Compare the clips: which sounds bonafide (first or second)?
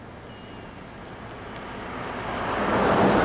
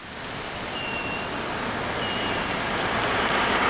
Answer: first